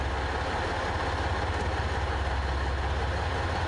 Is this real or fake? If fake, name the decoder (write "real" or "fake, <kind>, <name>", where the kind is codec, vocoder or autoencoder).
real